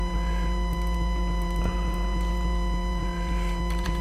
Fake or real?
fake